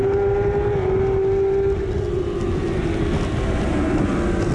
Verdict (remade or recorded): recorded